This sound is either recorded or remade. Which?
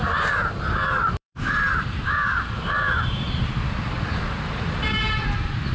remade